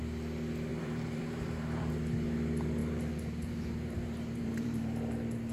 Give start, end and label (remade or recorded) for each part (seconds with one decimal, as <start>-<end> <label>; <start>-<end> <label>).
0.0-0.7 recorded; 0.7-1.9 remade; 1.9-2.8 recorded; 2.8-5.0 remade; 5.0-5.5 recorded